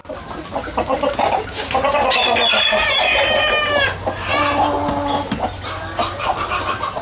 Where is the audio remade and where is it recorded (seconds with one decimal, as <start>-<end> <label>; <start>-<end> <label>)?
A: 0.0-7.0 recorded